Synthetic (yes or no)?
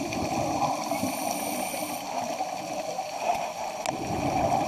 no